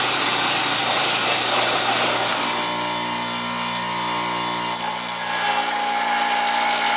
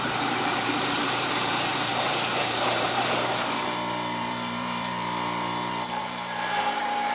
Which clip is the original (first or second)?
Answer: first